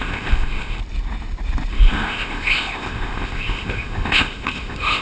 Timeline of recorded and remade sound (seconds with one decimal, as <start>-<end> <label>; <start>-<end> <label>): 0.0-0.8 remade; 0.8-1.7 recorded; 1.7-5.0 remade